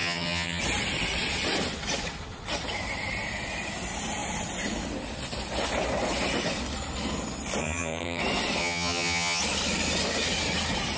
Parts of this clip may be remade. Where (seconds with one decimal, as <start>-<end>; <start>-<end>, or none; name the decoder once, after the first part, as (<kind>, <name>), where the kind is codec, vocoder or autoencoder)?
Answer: 0.0-0.6 (vocoder, HiFi-GAN); 7.6-8.2; 8.6-9.4